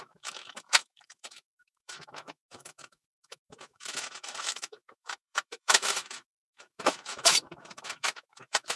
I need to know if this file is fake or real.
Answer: fake